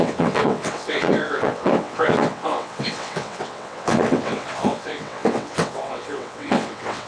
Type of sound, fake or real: fake